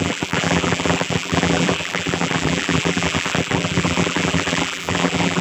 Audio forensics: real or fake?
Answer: fake